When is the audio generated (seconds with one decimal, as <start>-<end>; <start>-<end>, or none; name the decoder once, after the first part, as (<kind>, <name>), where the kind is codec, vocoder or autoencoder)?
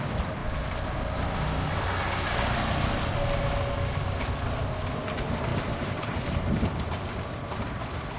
5.5-6.8 (vocoder, BigVGAN v2)